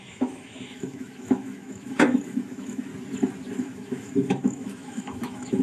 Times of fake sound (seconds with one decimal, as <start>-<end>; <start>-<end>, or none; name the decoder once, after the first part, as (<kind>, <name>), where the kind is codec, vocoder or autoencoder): 0.0-2.9 (autoencoder, DAC-VAE); 3.6-5.6